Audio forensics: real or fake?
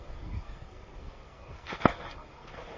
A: fake